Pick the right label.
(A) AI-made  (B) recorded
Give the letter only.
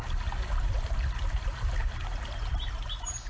B